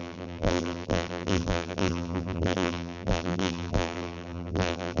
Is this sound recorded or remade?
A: remade